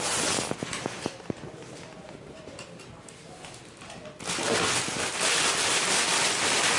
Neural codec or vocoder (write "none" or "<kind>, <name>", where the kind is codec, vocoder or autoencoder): none